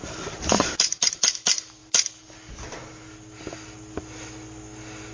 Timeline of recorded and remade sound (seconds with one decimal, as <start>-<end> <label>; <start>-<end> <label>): 0.0-5.1 recorded